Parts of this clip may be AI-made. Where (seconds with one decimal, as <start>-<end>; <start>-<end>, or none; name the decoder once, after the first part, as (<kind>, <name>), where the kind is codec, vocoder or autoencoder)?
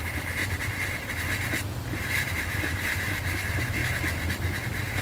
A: 0.0-0.4 (vocoder, BigVGAN v2); 2.3-3.8